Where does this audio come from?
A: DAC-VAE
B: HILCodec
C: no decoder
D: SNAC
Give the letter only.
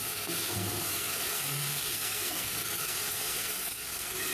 D